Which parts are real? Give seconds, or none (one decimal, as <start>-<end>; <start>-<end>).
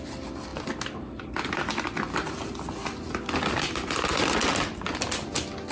0.0-5.7